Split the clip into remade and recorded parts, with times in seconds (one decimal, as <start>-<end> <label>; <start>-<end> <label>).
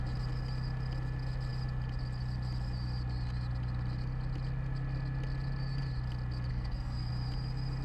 0.0-6.5 recorded; 6.5-7.1 remade; 7.1-7.8 recorded